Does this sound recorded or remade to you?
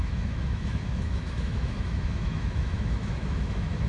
remade